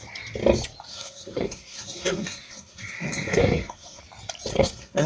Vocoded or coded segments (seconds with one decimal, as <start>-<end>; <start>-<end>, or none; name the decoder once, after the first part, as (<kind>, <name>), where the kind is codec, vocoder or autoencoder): 0.9-4.0 (codec, SNAC); 4.5-5.1